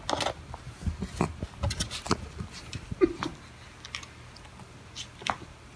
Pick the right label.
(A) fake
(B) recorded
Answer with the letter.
B